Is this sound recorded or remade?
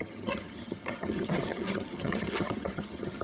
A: remade